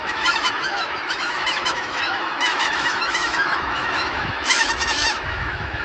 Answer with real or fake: fake